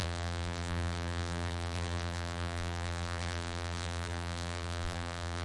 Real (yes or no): no